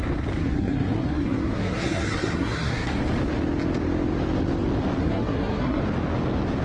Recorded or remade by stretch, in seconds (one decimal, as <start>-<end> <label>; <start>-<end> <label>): 0.0-0.4 recorded; 0.4-3.0 remade; 3.0-5.0 recorded; 5.0-5.8 remade; 5.8-6.6 recorded